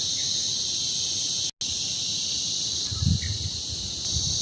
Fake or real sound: real